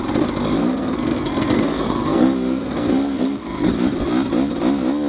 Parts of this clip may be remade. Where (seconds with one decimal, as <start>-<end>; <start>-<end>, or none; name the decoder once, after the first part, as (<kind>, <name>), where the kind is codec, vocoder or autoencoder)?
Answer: 0.6-3.7 (codec, SNAC)